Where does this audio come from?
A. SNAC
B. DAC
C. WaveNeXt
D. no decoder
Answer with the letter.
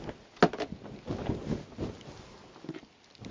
D